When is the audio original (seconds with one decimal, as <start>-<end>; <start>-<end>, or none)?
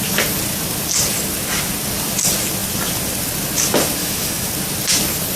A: 0.0-4.0; 4.5-5.4